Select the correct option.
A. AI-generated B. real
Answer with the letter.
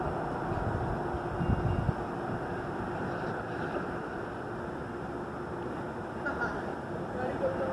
B